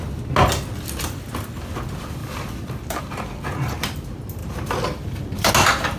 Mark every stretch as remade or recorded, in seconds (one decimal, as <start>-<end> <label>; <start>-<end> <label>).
0.0-2.2 recorded; 2.2-3.0 remade; 3.0-4.4 recorded; 4.4-5.5 remade; 5.5-6.0 recorded